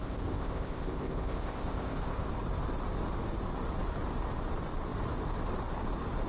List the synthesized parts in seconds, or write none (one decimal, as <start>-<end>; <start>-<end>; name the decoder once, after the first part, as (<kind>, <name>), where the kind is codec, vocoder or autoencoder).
0.0-2.3 (codec, ZipCodec)

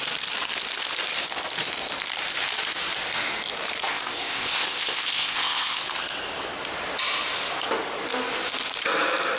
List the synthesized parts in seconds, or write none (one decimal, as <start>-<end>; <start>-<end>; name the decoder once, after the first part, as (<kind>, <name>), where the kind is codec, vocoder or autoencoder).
3.9-5.8 (codec, ZipCodec)

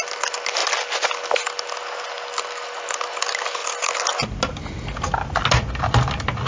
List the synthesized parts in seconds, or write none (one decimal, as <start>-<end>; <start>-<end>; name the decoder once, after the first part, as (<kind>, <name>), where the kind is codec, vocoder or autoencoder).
none

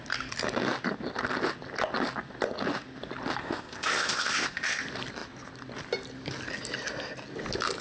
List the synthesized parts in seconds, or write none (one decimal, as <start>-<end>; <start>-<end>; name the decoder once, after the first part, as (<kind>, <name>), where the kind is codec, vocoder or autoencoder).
3.4-4.8 (codec, ZipCodec)

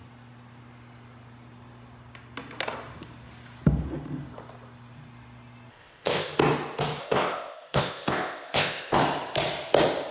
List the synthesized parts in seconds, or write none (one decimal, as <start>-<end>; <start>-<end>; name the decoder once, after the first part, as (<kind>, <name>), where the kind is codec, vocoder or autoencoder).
5.7-6.3 (codec, ZipCodec); 7.0-9.0